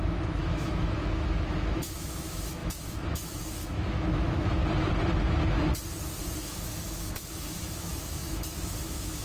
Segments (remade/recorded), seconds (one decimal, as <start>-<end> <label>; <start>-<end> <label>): 0.0-4.6 remade; 4.6-6.4 recorded; 6.4-9.2 remade